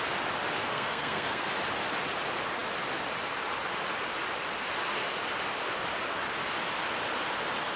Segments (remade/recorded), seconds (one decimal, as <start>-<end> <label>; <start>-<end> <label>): 0.0-0.7 recorded; 0.7-1.5 remade; 1.5-7.8 recorded